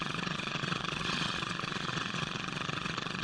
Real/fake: fake